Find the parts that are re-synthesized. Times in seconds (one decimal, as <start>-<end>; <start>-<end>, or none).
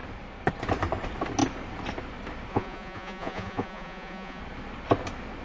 2.5-4.4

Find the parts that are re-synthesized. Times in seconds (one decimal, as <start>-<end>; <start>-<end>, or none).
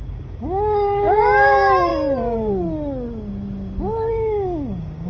0.0-1.9; 4.1-5.1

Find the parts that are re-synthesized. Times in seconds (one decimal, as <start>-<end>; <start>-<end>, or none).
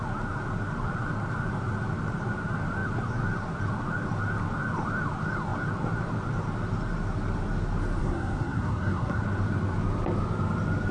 8.0-9.2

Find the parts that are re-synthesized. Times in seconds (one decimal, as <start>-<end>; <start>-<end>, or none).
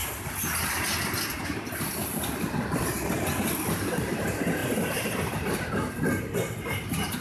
none